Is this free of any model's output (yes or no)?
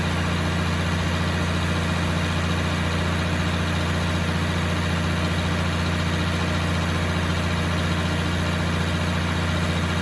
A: yes